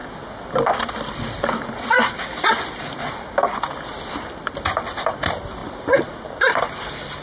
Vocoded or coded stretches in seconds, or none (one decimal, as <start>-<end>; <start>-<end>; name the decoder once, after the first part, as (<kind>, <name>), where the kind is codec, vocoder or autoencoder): none